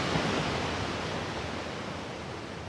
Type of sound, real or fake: real